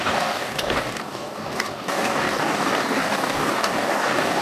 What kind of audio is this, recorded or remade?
remade